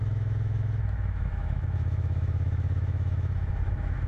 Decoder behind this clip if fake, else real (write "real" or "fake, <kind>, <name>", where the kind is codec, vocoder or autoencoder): fake, autoencoder, DAC-VAE